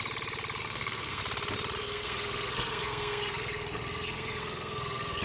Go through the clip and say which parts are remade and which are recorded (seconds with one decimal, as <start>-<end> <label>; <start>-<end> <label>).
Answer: 0.0-0.6 recorded; 0.6-1.2 remade; 1.2-1.8 recorded; 1.8-5.2 remade